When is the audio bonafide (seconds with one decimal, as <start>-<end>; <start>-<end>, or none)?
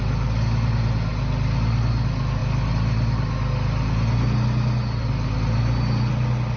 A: 0.0-6.6